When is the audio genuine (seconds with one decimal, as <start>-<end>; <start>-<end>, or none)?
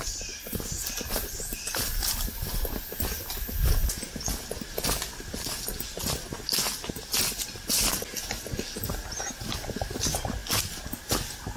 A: 0.0-11.6